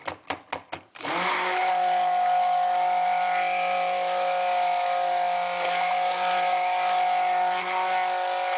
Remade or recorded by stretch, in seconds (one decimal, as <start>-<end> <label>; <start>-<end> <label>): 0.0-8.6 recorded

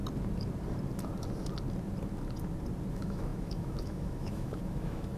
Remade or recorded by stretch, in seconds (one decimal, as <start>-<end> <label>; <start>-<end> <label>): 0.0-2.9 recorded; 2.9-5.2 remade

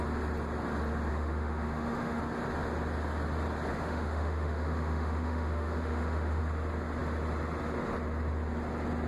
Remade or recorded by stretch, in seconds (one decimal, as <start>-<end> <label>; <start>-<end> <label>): 0.0-1.1 recorded; 1.1-2.2 remade; 2.2-3.7 recorded; 3.7-6.4 remade; 6.4-9.1 recorded